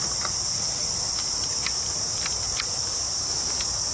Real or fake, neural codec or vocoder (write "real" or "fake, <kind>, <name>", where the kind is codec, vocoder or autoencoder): real